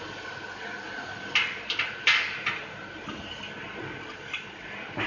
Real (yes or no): yes